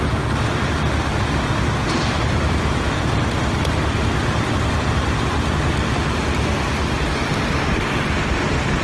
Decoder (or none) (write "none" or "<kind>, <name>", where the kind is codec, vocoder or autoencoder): none